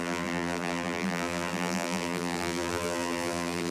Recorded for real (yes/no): no